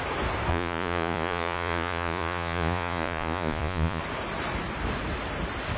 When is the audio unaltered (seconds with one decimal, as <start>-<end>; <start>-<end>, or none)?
0.0-0.5; 4.0-5.8